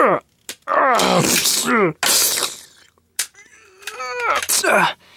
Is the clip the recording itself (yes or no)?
yes